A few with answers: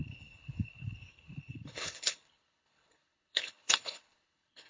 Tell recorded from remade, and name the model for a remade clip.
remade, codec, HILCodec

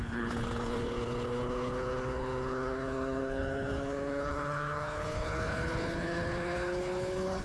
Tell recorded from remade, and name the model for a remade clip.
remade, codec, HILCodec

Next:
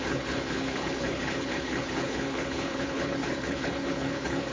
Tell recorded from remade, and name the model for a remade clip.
remade, codec, HILCodec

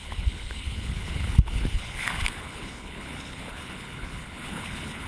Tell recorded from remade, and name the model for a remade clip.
remade, codec, HILCodec